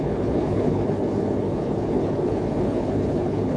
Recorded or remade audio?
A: remade